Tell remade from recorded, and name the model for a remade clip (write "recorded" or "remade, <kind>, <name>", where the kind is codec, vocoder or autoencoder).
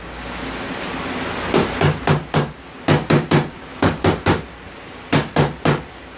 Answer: recorded